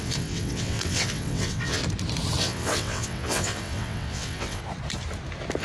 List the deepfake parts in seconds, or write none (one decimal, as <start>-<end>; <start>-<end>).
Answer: 0.0-1.8; 2.4-4.6